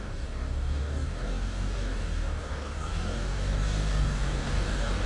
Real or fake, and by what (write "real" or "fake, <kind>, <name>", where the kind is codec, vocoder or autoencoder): fake, codec, DAC